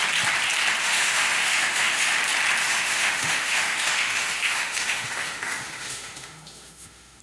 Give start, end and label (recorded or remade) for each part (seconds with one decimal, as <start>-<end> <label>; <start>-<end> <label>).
0.0-0.8 recorded; 0.8-2.2 remade; 2.2-2.6 recorded; 2.6-7.2 remade